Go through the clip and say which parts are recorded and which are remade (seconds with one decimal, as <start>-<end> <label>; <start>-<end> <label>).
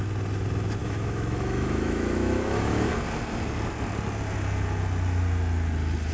0.0-0.8 recorded; 0.8-2.9 remade; 2.9-6.1 recorded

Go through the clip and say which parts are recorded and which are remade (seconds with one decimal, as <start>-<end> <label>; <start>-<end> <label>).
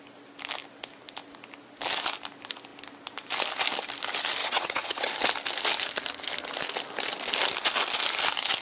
0.0-4.4 recorded; 4.4-5.1 remade; 5.1-8.6 recorded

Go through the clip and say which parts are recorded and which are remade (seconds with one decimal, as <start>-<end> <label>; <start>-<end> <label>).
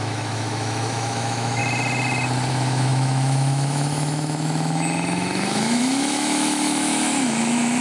0.0-1.6 remade; 1.6-2.5 recorded; 2.5-7.8 remade